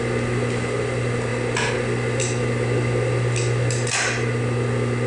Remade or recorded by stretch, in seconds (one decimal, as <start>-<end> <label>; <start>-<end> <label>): 0.0-5.1 recorded